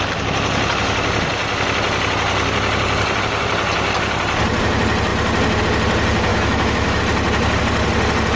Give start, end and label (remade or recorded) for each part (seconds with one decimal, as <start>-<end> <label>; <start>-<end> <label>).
0.0-6.3 recorded; 6.3-7.0 remade; 7.0-8.4 recorded